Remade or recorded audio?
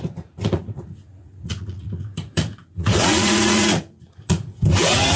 remade